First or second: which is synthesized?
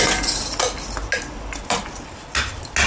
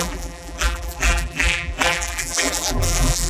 second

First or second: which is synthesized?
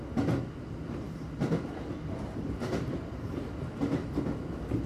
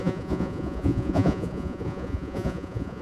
second